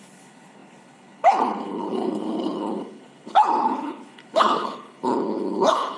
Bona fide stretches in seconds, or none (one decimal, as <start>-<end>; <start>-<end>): none